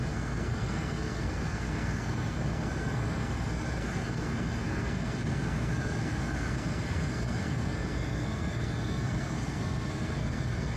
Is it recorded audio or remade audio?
remade